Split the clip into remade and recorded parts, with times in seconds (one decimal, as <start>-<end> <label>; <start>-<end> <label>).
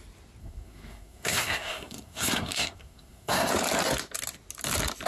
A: 0.0-0.4 recorded; 0.4-3.5 remade; 3.5-5.1 recorded